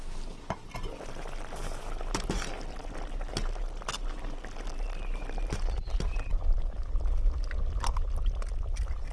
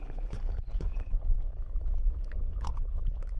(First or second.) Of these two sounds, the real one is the first